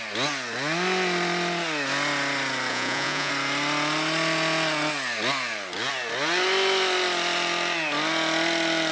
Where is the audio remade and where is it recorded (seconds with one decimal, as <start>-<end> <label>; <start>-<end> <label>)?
0.0-2.7 recorded; 2.7-3.3 remade; 3.3-8.9 recorded